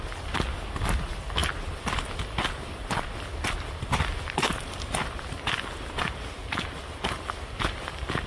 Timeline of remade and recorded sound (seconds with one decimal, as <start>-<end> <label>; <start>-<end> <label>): 0.0-8.3 recorded